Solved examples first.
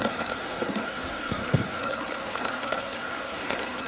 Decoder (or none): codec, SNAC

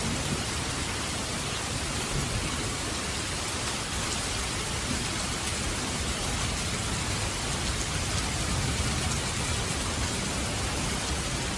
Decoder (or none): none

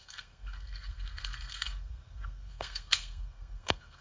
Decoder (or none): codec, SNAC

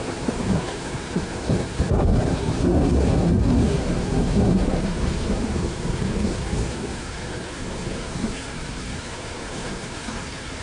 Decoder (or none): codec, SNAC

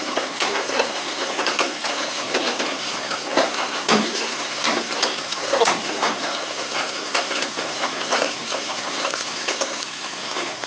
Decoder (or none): codec, SNAC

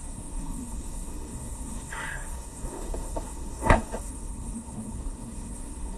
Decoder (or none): codec, SNAC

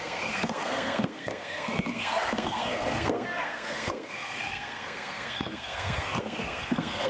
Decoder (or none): codec, SNAC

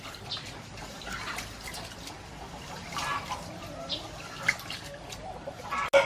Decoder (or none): none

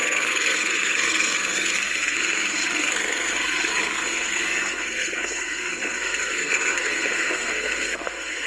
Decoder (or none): codec, SNAC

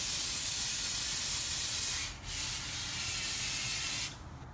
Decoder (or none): none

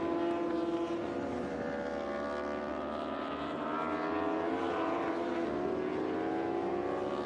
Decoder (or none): none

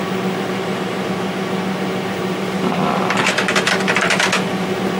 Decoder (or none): none